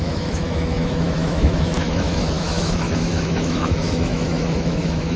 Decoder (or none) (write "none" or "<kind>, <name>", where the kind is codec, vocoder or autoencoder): autoencoder, DAC-VAE